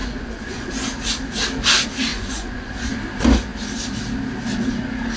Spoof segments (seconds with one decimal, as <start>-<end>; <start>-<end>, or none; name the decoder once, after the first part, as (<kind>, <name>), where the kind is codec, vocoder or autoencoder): 0.0-0.7 (vocoder, Vocos); 2.1-2.9